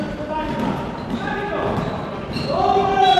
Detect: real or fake real